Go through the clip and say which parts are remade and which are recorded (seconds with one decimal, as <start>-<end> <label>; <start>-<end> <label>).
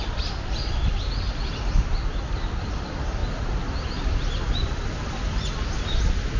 0.0-6.4 recorded